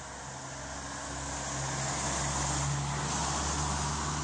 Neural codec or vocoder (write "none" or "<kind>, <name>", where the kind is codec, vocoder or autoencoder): none